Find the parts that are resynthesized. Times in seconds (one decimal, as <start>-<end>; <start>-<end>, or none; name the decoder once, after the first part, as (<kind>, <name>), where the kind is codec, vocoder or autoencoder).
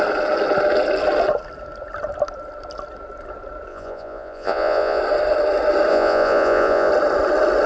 3.7-5.0 (vocoder, Vocos); 5.9-6.9